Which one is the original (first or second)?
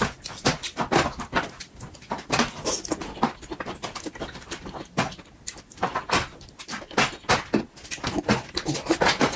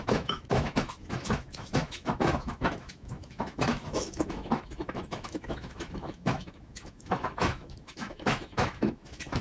first